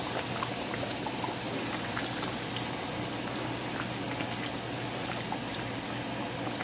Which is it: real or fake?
real